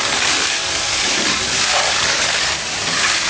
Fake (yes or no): yes